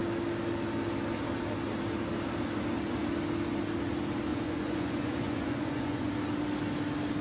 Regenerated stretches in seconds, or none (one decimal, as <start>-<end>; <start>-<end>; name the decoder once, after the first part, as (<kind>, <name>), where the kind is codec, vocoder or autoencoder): 4.3-6.1 (vocoder, Vocos)